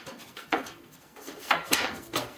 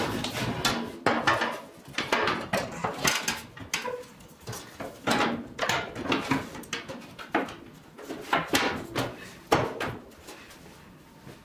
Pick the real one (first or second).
second